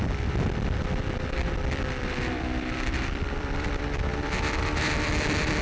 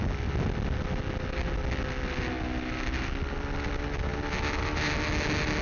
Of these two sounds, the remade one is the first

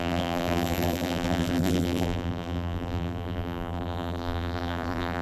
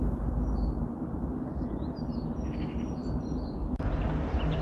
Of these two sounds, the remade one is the first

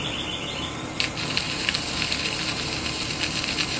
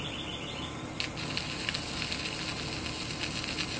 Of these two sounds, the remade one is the first